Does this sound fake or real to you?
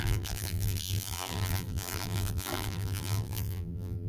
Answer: fake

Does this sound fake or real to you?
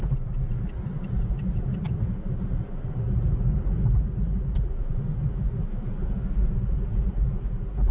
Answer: real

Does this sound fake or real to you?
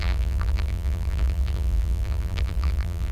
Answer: fake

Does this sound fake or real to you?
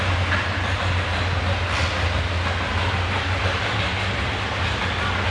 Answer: real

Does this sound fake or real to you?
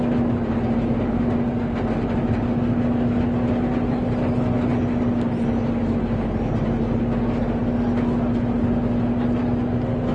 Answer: real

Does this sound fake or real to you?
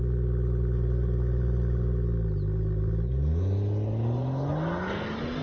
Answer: real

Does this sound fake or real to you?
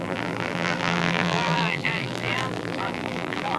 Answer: fake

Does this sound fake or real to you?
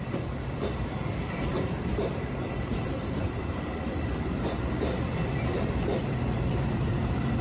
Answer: fake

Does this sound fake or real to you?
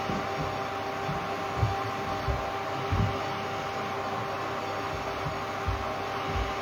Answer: real